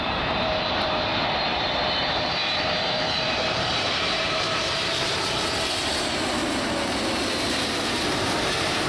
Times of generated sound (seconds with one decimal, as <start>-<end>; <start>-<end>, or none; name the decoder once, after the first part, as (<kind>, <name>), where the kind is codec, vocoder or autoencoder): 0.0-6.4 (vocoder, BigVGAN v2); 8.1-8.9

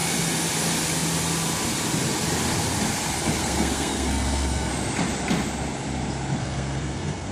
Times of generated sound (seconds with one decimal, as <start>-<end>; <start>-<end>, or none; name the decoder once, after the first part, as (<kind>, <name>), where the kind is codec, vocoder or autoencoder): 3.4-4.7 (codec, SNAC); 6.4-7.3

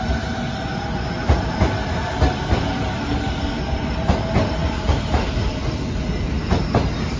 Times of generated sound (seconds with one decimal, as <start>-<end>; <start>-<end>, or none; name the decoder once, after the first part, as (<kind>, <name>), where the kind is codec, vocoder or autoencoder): none

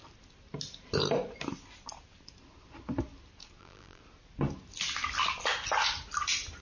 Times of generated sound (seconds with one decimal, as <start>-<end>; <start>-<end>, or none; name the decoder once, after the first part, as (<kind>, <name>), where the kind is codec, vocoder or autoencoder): 3.6-4.0 (vocoder, BigVGAN v2)

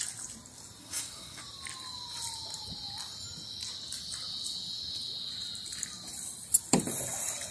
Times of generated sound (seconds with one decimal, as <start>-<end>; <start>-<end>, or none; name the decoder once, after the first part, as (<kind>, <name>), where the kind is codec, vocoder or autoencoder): 0.8-1.4 (codec, SNAC)

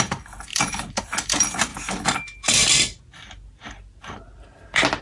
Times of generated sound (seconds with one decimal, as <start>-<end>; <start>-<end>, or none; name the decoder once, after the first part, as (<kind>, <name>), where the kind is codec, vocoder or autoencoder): 0.0-1.7 (vocoder, BigVGAN v2)